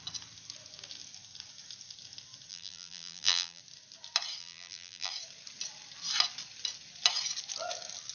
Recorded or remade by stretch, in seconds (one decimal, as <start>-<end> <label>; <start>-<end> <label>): 0.0-2.5 recorded; 2.5-3.6 remade; 3.6-4.4 recorded; 4.4-5.1 remade; 5.1-8.1 recorded

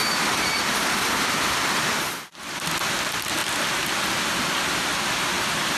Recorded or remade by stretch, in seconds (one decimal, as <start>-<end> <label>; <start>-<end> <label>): 0.0-5.8 recorded

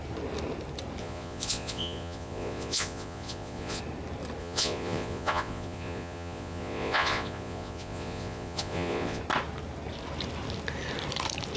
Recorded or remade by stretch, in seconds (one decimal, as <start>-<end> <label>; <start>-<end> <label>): 0.0-1.0 recorded; 1.0-3.8 remade; 3.8-4.4 recorded; 4.4-9.2 remade; 9.2-11.6 recorded

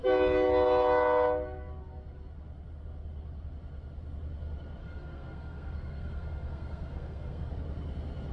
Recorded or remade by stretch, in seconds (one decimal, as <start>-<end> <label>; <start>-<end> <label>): 0.0-4.8 recorded; 4.8-7.5 remade; 7.5-8.3 recorded